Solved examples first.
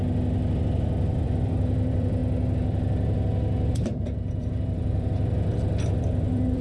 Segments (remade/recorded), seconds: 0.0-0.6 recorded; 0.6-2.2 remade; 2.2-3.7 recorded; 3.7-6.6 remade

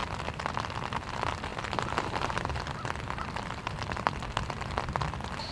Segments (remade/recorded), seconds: 0.0-1.5 recorded; 1.5-4.8 remade; 4.8-5.5 recorded

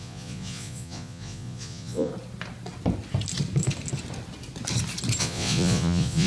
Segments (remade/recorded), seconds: 0.0-2.1 remade; 2.1-5.2 recorded; 5.2-6.3 remade

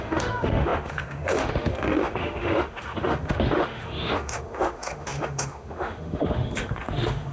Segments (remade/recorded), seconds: 0.0-7.3 remade

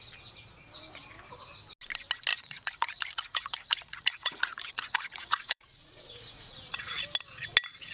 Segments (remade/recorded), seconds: 0.0-2.3 recorded; 2.3-7.0 remade; 7.0-7.9 recorded

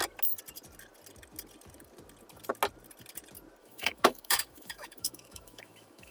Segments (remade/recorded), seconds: 0.0-3.6 recorded; 3.6-6.1 remade